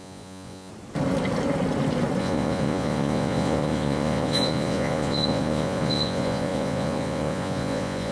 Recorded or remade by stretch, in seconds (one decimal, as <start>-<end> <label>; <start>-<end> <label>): 0.0-0.7 remade; 0.7-2.2 recorded; 2.2-8.1 remade